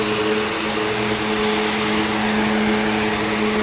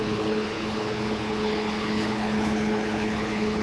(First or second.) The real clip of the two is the first